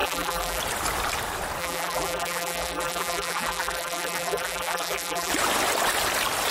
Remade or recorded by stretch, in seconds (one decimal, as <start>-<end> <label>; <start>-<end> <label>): 0.0-0.6 remade; 0.6-1.6 recorded; 1.6-5.3 remade; 5.3-6.5 recorded